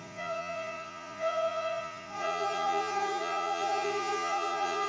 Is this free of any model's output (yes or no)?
no